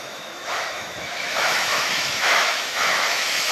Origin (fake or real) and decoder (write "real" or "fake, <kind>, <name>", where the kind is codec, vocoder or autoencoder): fake, autoencoder, DAC-VAE